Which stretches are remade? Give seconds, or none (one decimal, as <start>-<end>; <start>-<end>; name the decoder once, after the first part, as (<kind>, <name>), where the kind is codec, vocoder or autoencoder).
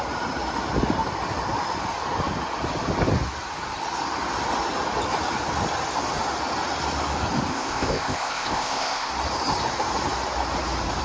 7.5-9.1 (codec, ZipCodec)